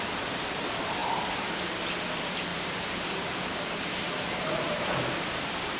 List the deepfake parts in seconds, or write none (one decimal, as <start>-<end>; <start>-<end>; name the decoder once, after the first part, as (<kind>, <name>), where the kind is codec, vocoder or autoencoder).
2.5-5.8 (vocoder, BigVGAN v2)